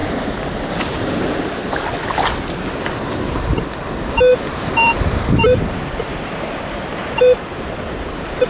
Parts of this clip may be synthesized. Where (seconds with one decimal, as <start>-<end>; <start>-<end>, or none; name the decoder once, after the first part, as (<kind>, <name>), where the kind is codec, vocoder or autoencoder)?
4.3-8.5 (vocoder, BigVGAN v2)